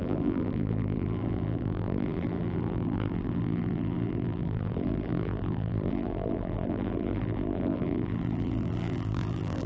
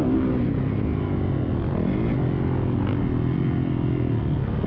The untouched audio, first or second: second